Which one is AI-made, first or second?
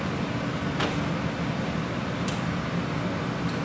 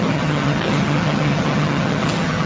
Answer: second